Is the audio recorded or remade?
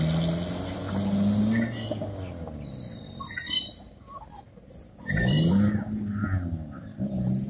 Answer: recorded